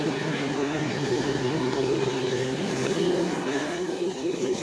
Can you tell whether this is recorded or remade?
remade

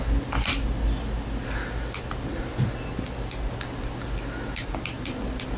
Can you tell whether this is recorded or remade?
recorded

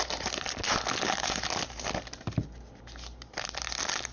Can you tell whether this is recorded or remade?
recorded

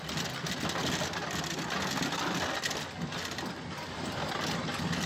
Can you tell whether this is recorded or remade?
recorded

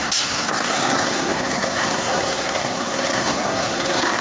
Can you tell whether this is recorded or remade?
remade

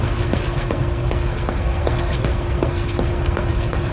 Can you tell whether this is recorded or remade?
remade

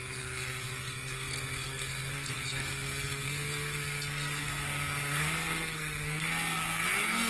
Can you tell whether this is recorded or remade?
remade